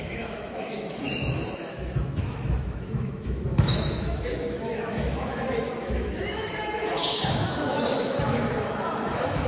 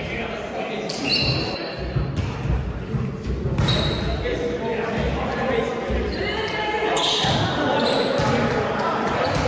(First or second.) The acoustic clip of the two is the second